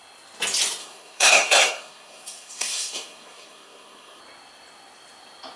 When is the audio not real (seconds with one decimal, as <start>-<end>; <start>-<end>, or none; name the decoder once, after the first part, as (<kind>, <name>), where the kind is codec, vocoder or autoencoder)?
0.8-4.2 (codec, SNAC)